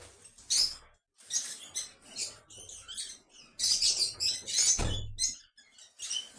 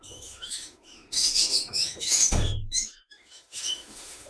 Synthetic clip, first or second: second